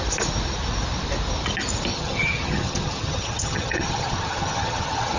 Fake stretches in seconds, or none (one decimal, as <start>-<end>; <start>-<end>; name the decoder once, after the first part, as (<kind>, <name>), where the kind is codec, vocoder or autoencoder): 1.9-5.2 (vocoder, HiFi-GAN)

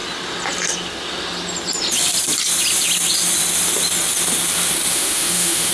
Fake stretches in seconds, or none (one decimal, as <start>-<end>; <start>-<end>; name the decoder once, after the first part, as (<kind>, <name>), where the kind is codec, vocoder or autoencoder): 4.9-5.7 (autoencoder, DAC-VAE)

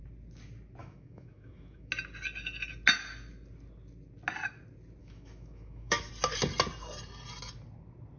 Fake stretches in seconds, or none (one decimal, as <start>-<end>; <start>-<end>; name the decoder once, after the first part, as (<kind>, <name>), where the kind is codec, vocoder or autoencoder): 0.8-1.9 (autoencoder, DAC-VAE); 5.0-6.1

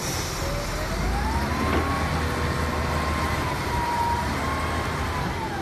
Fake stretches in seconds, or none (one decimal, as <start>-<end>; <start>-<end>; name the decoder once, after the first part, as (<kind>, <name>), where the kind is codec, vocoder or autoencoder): 3.3-4.4 (vocoder, BigVGAN v2)

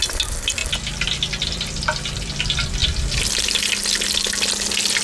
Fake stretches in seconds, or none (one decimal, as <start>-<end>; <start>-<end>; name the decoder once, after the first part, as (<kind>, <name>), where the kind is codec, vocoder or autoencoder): none